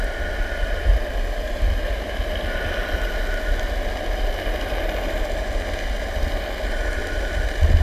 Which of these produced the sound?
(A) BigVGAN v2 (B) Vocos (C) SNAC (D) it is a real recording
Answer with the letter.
D